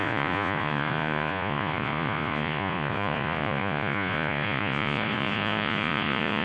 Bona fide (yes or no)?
no